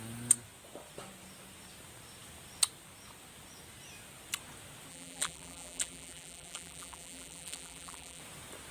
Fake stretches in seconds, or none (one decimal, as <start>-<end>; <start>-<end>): 4.9-8.2